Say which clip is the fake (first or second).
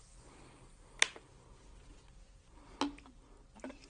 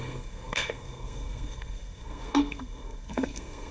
second